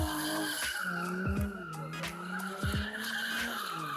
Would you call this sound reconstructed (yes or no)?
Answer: no